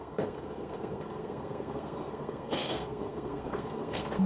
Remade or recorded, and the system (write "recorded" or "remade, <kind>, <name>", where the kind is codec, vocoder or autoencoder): remade, codec, SNAC